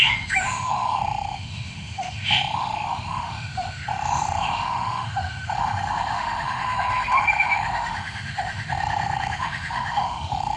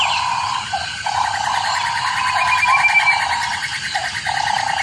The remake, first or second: first